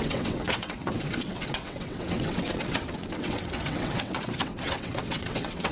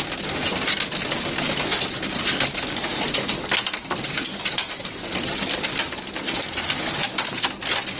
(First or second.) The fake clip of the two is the first